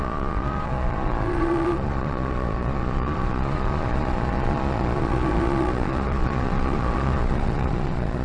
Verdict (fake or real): fake